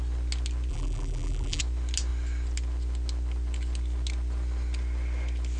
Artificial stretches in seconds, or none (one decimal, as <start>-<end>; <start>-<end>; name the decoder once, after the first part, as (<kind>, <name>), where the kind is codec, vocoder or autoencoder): 0.7-1.6 (vocoder, BigVGAN v2)